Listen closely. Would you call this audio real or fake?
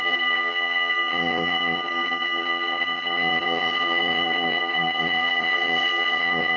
fake